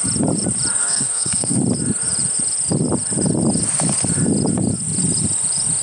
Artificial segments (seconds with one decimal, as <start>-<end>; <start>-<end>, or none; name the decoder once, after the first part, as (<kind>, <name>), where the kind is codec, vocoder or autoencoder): 0.8-1.6 (codec, SNAC)